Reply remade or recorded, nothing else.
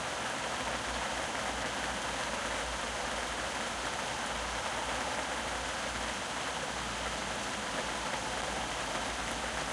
recorded